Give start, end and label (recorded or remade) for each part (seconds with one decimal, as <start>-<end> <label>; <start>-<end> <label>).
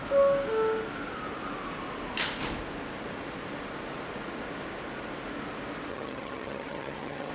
0.0-5.9 recorded; 5.9-7.3 remade